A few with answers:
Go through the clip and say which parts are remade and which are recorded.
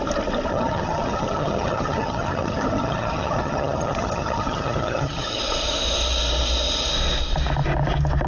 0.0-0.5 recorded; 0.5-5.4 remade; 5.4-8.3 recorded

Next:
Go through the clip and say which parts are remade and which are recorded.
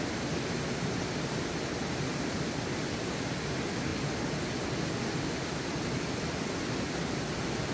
0.0-7.7 recorded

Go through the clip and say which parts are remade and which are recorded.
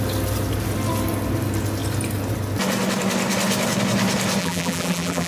0.0-4.4 recorded; 4.4-5.3 remade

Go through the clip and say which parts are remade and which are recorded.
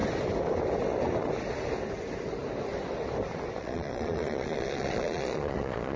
0.0-3.6 recorded; 3.6-6.0 remade